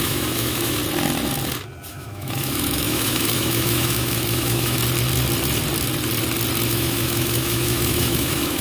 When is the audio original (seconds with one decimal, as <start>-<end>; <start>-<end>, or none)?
0.8-1.9; 4.8-6.7